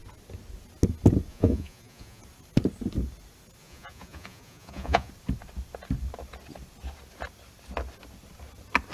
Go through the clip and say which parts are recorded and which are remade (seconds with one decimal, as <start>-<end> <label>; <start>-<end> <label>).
0.0-1.3 recorded; 1.3-2.2 remade; 2.2-3.6 recorded; 3.6-5.1 remade; 5.1-8.9 recorded